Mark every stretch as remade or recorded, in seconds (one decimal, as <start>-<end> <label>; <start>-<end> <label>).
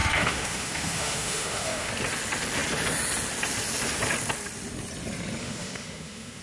0.0-1.9 remade; 1.9-5.4 recorded; 5.4-6.4 remade